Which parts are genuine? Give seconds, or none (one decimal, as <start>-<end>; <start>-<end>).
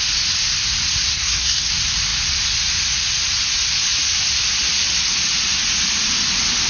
0.0-1.1; 1.7-6.7